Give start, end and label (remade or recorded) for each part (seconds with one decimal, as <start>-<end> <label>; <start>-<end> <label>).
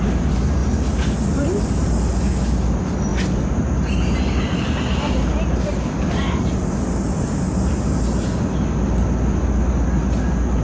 0.0-10.6 recorded